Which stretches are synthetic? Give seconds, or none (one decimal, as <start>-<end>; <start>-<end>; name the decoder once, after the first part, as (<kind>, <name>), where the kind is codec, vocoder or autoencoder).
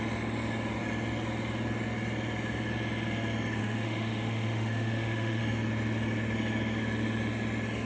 3.6-5.4 (autoencoder, DAC-VAE)